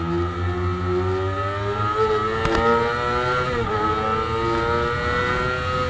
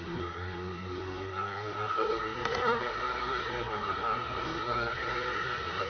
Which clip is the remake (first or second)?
second